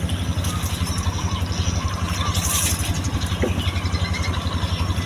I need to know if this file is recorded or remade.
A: recorded